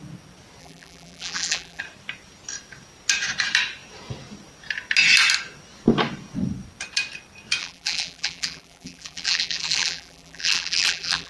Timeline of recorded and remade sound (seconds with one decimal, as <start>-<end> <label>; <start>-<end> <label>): 0.0-0.6 recorded; 0.6-1.8 remade; 1.8-7.6 recorded; 7.6-11.3 remade